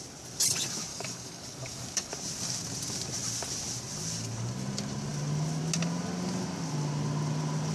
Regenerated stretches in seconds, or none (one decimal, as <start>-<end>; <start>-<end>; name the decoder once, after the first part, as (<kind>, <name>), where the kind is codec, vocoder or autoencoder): 0.9-2.1 (codec, DAC)